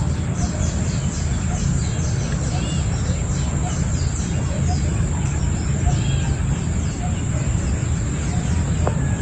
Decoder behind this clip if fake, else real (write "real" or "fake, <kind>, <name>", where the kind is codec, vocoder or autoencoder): real